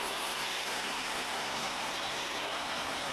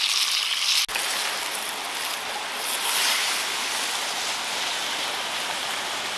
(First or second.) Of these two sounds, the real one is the second